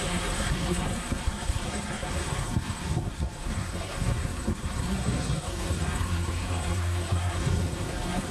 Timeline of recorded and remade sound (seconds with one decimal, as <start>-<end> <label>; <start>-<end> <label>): 0.0-8.3 remade

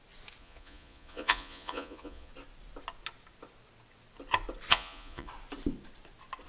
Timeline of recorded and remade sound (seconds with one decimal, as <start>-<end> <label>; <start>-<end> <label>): 0.0-0.4 recorded; 0.4-2.3 remade; 2.3-4.7 recorded; 4.7-5.3 remade; 5.3-6.5 recorded

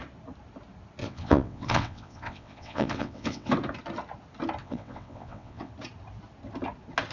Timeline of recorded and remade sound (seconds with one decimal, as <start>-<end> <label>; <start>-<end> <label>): 0.0-1.0 recorded; 1.0-3.5 remade; 3.5-4.6 recorded; 4.6-5.7 remade; 5.7-7.1 recorded